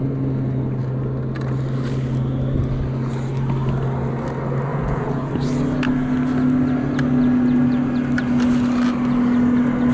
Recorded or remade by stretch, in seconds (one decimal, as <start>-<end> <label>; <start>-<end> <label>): 0.0-4.7 recorded; 4.7-5.3 remade; 5.3-9.9 recorded

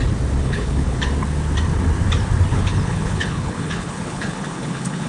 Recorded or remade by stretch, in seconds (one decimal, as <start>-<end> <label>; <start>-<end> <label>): 0.0-0.4 recorded; 0.4-1.0 remade; 1.0-2.5 recorded; 2.5-5.1 remade

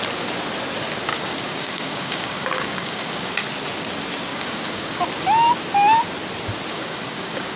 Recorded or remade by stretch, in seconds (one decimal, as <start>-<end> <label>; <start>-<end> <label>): 0.0-1.1 recorded; 1.1-3.3 remade; 3.3-4.3 recorded; 4.3-5.0 remade; 5.0-6.7 recorded; 6.7-7.6 remade

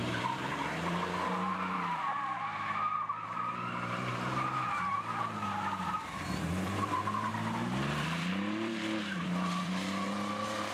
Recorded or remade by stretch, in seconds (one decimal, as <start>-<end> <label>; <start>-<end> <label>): 0.0-7.3 remade; 7.3-8.0 recorded; 8.0-10.7 remade

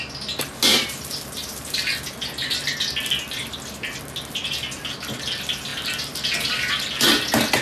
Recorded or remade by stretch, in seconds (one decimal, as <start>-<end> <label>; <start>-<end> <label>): 0.0-0.7 recorded; 0.7-1.8 remade; 1.8-7.6 recorded